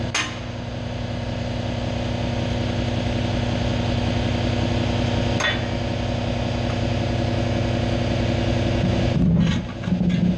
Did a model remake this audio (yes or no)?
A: no